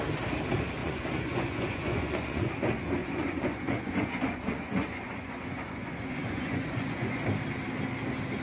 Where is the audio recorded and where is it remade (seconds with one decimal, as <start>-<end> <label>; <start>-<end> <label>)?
0.0-0.8 recorded; 0.8-2.5 remade; 2.5-3.0 recorded; 3.0-7.2 remade; 7.2-8.4 recorded